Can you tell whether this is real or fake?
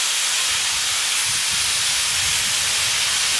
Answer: real